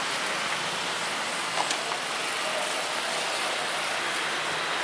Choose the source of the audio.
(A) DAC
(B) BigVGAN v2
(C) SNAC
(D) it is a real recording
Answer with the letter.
D